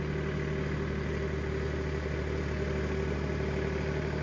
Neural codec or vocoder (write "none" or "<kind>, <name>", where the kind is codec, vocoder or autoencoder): none